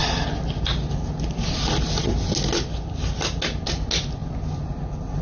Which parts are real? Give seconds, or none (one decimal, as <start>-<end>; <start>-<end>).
0.0-5.2